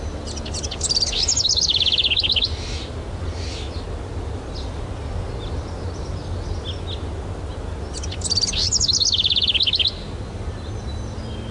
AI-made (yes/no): no